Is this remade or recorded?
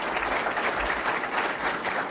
recorded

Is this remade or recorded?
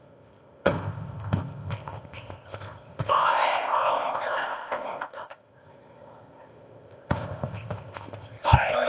remade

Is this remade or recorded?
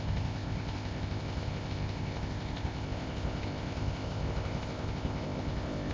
remade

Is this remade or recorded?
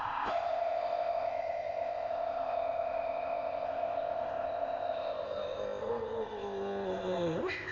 remade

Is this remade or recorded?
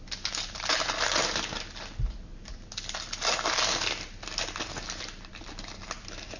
recorded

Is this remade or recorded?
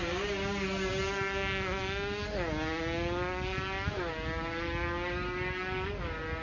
recorded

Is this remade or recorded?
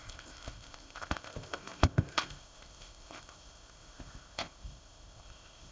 remade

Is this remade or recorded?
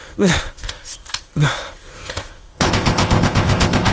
remade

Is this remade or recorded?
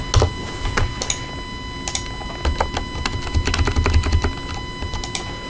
recorded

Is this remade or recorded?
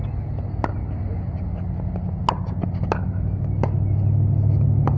recorded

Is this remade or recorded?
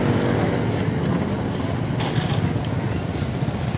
recorded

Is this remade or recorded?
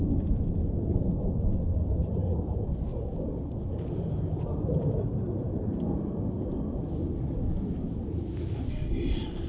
recorded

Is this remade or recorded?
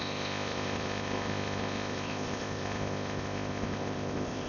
remade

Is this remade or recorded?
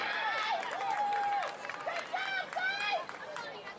recorded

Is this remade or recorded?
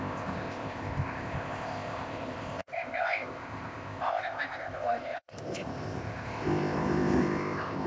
remade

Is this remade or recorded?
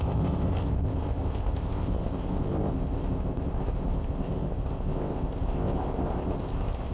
remade